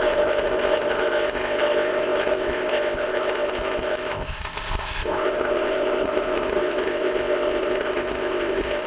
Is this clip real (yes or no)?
no